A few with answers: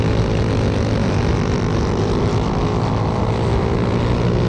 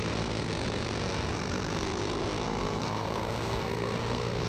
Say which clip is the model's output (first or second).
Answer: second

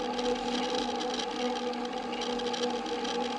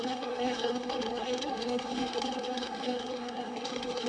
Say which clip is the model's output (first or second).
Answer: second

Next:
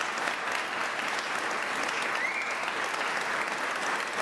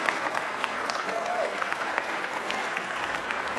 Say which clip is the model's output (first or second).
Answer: second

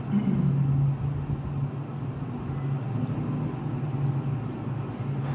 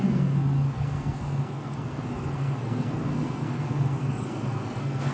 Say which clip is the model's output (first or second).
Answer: second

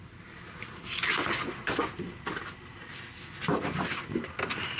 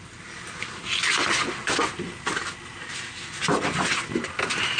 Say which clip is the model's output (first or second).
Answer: first